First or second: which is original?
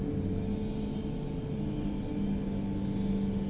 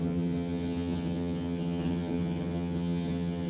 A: first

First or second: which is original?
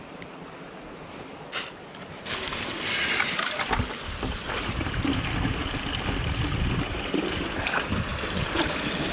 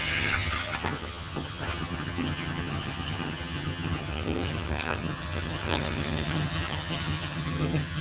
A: first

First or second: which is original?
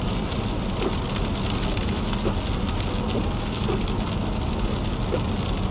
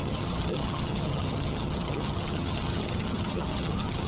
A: first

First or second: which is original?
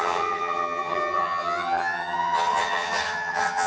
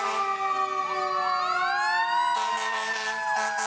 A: second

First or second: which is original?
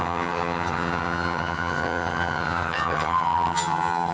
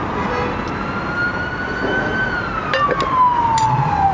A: second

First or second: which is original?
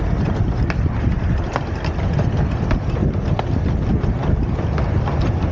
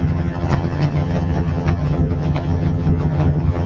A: first